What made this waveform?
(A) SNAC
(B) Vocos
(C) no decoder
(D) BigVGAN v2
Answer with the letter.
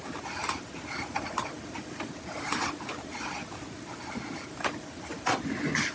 C